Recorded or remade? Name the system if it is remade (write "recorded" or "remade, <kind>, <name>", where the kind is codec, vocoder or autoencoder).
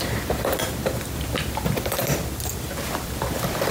remade, vocoder, BigVGAN v2